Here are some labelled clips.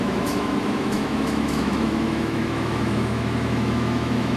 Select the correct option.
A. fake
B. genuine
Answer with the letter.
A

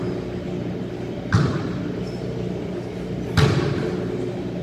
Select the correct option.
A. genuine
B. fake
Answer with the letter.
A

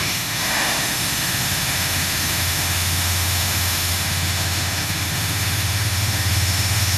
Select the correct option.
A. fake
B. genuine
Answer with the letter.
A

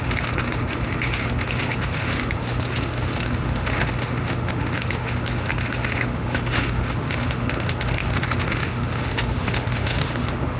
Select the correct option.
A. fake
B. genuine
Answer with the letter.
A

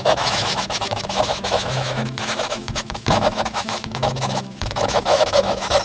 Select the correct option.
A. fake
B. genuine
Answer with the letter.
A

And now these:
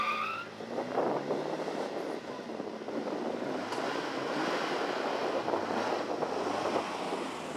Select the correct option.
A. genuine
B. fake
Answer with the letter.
A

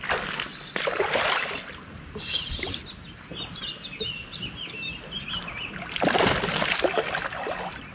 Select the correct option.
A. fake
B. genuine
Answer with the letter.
B